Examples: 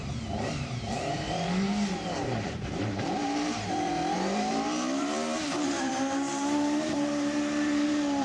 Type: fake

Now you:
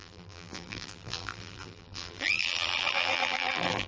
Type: fake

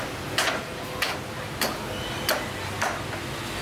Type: real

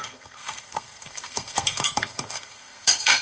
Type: fake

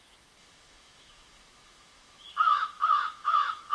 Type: fake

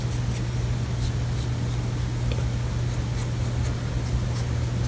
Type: real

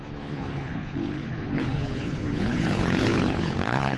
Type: fake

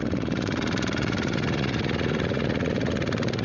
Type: fake